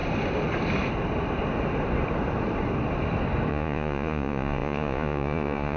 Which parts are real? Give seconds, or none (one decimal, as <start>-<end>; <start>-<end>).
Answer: 0.0-3.5